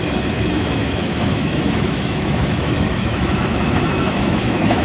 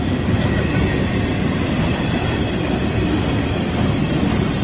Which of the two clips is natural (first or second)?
second